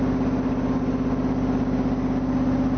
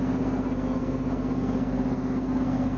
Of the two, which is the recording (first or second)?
first